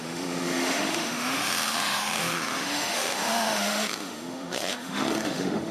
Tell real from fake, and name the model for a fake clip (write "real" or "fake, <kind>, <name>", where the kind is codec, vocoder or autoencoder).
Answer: fake, autoencoder, DAC-VAE